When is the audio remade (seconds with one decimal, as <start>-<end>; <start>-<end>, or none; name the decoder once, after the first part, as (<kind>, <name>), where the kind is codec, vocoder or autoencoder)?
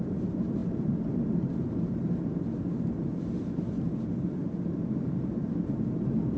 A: 0.0-6.4 (vocoder, BigVGAN v2)